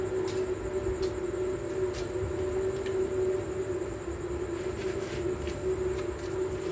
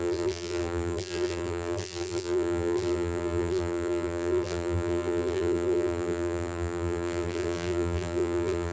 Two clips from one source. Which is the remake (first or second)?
second